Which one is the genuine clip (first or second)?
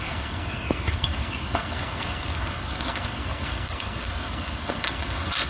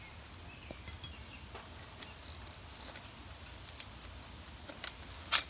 second